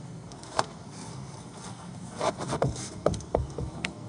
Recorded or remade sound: remade